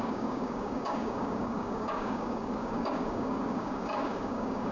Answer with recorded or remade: remade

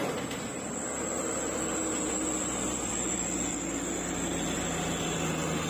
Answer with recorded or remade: recorded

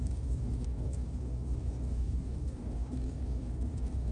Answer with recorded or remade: remade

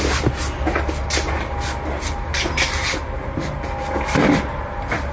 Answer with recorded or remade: recorded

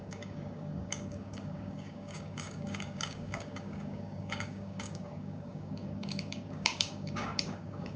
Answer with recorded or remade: remade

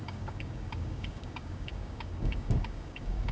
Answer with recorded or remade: remade